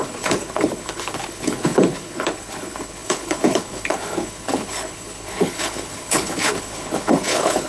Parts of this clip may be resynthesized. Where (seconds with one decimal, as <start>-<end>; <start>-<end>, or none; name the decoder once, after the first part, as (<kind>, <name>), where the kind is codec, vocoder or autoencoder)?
0.0-7.7 (codec, HILCodec)